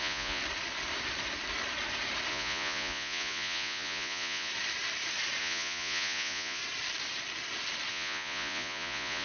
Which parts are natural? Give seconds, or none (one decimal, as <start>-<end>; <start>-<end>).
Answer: 0.4-2.3; 4.5-5.4; 6.6-7.9